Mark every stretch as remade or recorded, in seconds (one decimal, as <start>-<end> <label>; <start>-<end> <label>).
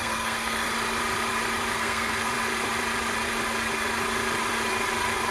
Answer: 0.0-0.7 remade; 0.7-1.7 recorded; 1.7-2.3 remade; 2.3-5.3 recorded